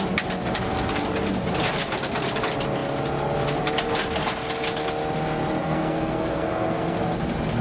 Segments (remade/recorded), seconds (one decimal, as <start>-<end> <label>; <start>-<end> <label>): 0.0-5.6 recorded; 5.6-7.0 remade; 7.0-7.6 recorded

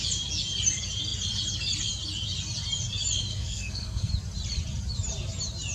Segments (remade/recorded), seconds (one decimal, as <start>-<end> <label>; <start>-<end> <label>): 0.0-3.3 recorded; 3.3-4.1 remade; 4.1-5.7 recorded

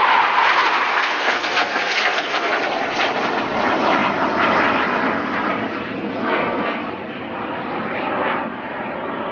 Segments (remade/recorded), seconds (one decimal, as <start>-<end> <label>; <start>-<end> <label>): 0.0-0.9 recorded; 0.9-2.5 remade; 2.5-6.2 recorded; 6.2-6.8 remade; 6.8-9.3 recorded

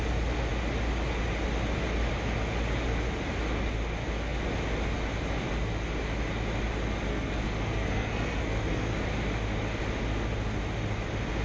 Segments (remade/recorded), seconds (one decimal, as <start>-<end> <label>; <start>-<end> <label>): 0.0-7.1 recorded; 7.1-8.9 remade; 8.9-11.4 recorded

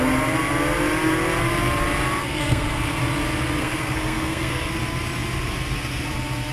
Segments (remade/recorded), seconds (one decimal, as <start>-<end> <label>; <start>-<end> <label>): 0.0-2.2 recorded; 2.2-3.0 remade; 3.0-3.6 recorded; 3.6-4.7 remade; 4.7-6.5 recorded

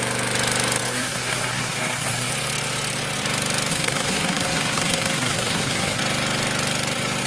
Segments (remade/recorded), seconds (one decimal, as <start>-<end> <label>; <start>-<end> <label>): 0.0-0.9 recorded; 0.9-2.3 remade; 2.3-3.7 recorded; 3.7-6.0 remade; 6.0-7.3 recorded

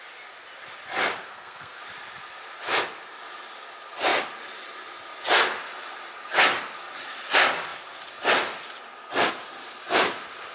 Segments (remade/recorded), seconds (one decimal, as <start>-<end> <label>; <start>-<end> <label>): 0.0-1.2 recorded; 1.2-1.8 remade; 1.8-10.5 recorded